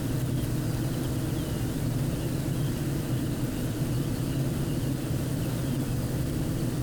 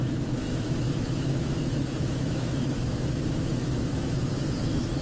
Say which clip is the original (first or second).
first